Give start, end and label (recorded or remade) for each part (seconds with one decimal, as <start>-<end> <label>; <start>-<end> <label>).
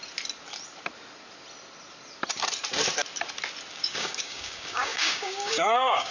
0.0-3.7 recorded; 3.7-6.1 remade